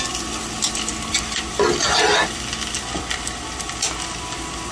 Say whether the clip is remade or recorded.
recorded